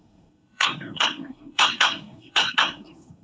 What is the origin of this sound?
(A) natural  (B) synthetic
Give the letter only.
B